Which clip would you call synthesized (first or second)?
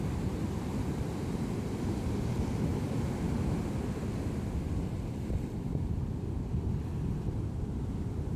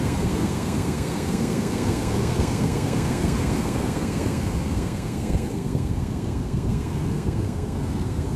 second